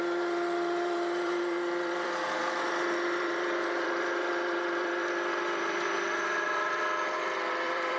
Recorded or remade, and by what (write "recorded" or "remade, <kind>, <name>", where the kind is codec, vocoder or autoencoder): remade, vocoder, BigVGAN v2